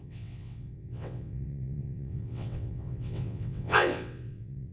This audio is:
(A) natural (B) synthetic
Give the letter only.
B